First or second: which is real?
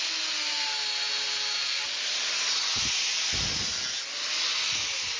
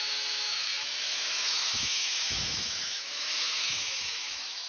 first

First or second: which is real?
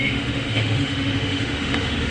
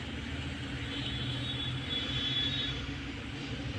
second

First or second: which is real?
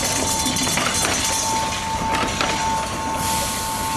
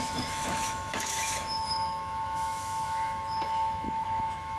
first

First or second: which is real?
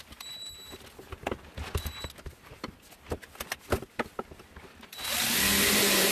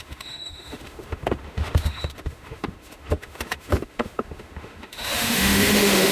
first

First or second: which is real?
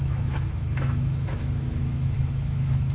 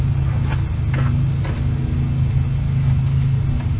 second